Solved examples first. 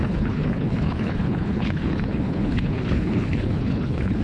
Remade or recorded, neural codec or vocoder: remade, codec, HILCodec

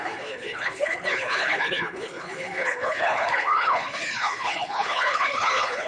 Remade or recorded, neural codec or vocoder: remade, codec, HILCodec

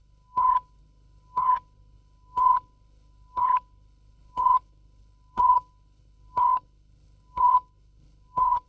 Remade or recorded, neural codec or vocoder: remade, codec, HILCodec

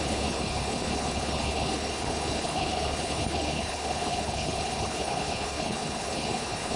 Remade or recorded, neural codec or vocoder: remade, codec, HILCodec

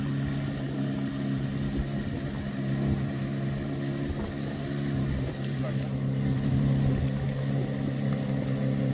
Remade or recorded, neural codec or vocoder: recorded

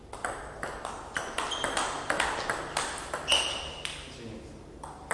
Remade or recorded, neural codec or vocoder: recorded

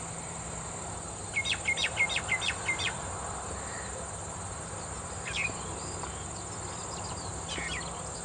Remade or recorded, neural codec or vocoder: recorded